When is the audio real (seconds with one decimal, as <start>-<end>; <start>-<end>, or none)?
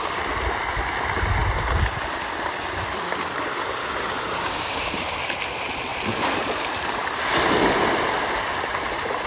0.0-3.8; 5.2-9.3